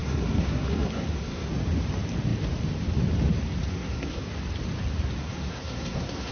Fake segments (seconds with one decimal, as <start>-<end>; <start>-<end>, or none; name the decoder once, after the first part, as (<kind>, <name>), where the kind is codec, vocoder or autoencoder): 0.0-1.5 (codec, SNAC); 3.7-4.2; 5.2-6.3